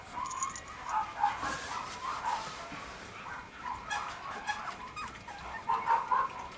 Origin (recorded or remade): recorded